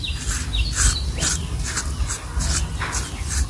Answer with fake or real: real